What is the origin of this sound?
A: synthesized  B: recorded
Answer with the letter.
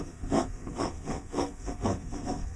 A